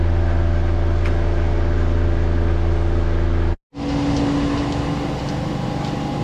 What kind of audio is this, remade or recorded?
recorded